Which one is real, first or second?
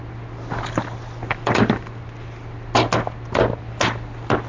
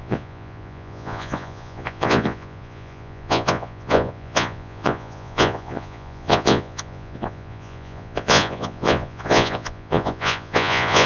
first